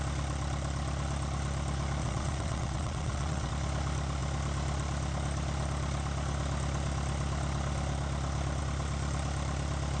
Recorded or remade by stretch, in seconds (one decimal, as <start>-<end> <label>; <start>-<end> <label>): 0.0-2.0 recorded; 2.0-3.5 remade; 3.5-10.0 recorded